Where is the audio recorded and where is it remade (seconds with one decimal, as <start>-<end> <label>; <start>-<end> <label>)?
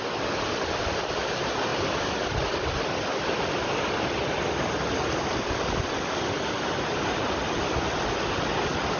0.0-9.0 recorded